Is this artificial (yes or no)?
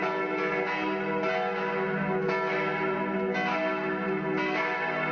no